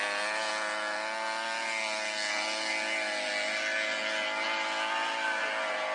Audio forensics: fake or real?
real